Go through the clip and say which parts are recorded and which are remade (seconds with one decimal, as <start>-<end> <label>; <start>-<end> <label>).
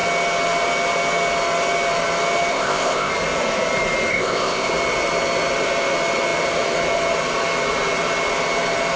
0.0-2.5 recorded; 2.5-3.1 remade; 3.1-4.1 recorded; 4.1-4.7 remade; 4.7-9.0 recorded